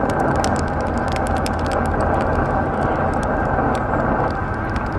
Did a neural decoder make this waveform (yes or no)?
no